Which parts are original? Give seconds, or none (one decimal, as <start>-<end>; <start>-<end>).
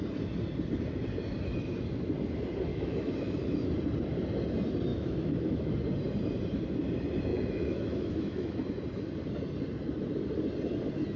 0.0-2.7; 3.7-4.9; 5.7-7.3; 8.6-11.2